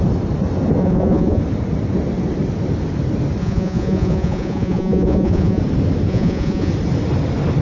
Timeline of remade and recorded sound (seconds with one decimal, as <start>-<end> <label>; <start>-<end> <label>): 0.0-0.8 recorded; 0.8-1.4 remade; 1.4-3.4 recorded; 3.4-5.6 remade; 5.6-6.1 recorded; 6.1-6.7 remade; 6.7-7.6 recorded